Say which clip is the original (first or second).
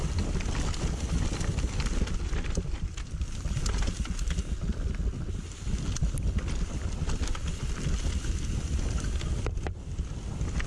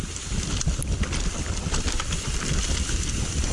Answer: first